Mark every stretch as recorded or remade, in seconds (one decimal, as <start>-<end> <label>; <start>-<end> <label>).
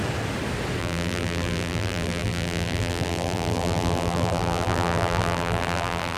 0.0-0.8 recorded; 0.8-6.2 remade